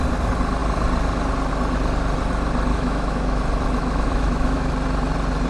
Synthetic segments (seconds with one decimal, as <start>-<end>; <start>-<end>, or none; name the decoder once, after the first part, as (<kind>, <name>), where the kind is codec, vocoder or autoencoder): 2.7-3.4 (autoencoder, DAC-VAE); 3.8-4.7